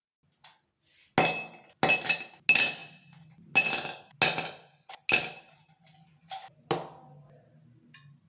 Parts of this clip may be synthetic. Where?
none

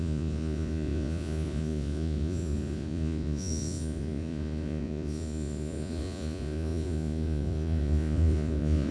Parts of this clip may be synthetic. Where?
0.0-8.9 (vocoder, Vocos)

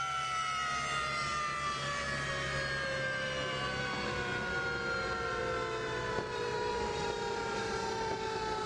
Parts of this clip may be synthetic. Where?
0.0-5.4 (vocoder, BigVGAN v2); 6.1-8.7

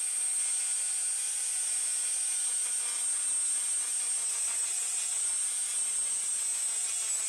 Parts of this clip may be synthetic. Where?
none